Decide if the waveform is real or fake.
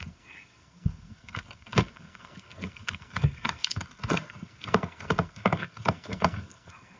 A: fake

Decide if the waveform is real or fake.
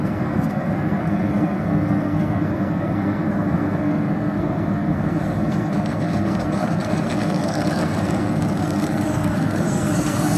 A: fake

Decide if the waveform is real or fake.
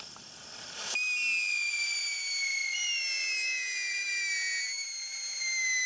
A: real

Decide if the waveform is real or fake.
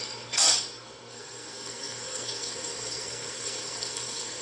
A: fake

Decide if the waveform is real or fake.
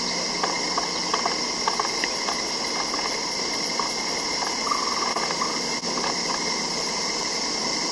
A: real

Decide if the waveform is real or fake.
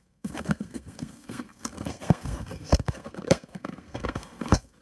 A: fake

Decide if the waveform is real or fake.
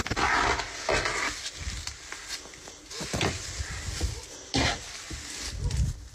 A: real